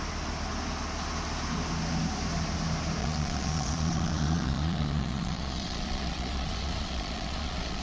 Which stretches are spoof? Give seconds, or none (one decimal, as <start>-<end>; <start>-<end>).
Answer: 3.0-7.8